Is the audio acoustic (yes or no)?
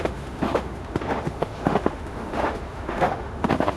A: no